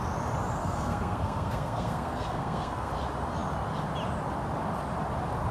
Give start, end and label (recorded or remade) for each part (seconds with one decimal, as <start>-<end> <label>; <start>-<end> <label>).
0.0-0.6 recorded; 0.6-2.9 remade; 2.9-5.5 recorded